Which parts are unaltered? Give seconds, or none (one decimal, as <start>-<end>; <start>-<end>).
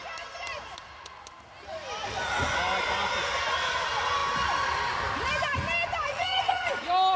0.0-6.1; 6.7-7.2